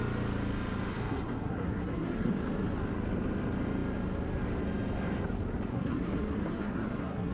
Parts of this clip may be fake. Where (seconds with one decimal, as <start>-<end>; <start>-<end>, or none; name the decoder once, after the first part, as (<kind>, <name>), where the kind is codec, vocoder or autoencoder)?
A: 0.9-2.3 (codec, SNAC); 5.7-7.3